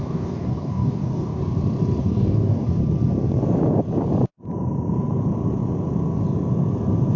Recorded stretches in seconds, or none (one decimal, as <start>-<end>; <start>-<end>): 1.4-2.0; 2.8-7.2